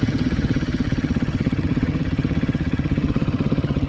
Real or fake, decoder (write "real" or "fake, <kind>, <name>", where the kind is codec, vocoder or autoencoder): fake, vocoder, HiFi-GAN